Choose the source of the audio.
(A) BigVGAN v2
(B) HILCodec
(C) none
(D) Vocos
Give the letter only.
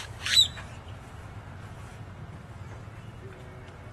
A